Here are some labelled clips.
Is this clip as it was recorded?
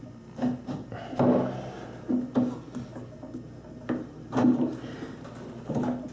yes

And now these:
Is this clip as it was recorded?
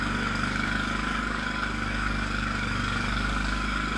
no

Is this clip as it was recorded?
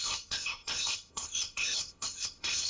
no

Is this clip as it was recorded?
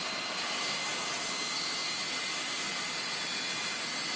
yes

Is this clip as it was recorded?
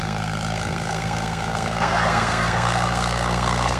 no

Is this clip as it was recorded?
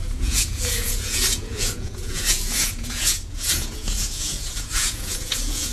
no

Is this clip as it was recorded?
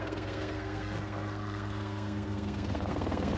no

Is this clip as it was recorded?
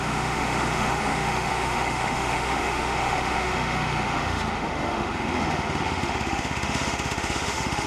no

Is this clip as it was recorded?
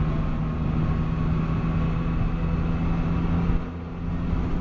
yes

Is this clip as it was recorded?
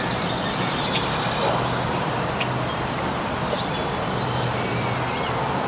yes